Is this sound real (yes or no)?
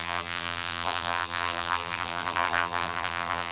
no